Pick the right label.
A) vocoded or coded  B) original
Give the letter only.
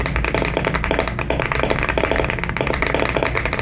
B